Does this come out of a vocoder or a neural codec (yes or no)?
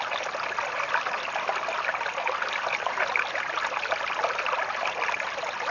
no